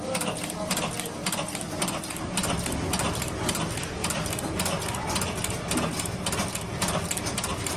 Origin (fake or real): real